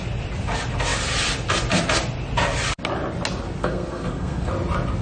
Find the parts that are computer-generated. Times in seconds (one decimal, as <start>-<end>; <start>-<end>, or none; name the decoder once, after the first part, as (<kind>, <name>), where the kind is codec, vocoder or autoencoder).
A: 3.6-4.5 (codec, SNAC)